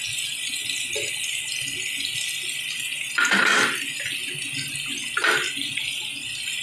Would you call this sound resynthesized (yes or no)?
no